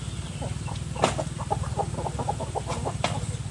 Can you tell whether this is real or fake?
real